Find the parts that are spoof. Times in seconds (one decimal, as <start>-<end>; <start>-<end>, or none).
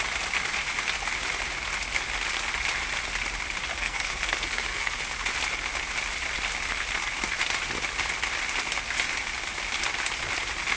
3.7-5.0